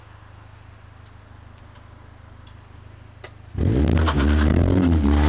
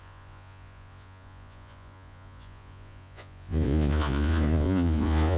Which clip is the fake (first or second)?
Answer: second